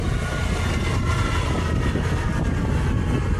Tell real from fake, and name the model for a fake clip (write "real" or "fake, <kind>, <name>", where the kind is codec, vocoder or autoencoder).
real